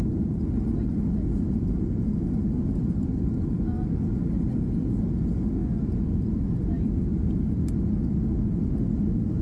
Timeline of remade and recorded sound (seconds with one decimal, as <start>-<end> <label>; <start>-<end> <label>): 0.0-9.4 recorded